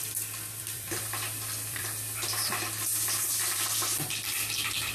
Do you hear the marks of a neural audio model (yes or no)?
yes